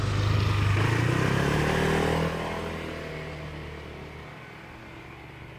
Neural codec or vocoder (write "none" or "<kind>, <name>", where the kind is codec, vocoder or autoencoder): none